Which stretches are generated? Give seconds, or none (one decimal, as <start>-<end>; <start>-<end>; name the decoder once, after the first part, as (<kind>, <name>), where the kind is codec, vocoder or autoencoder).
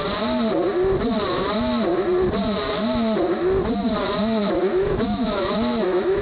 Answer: 4.4-6.2 (autoencoder, DAC-VAE)